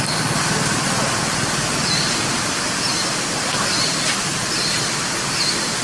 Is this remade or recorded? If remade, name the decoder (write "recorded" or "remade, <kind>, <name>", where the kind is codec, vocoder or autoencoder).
recorded